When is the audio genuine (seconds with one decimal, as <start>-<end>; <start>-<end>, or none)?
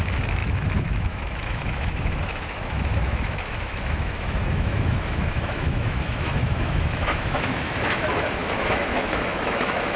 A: none